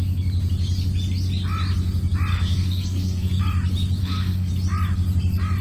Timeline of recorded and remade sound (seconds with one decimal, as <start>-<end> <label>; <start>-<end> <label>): 0.0-2.3 recorded; 2.3-3.4 remade; 3.4-4.0 recorded; 4.0-4.5 remade; 4.5-5.6 recorded